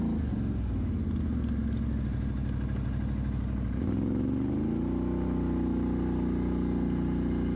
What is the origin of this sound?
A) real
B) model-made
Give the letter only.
A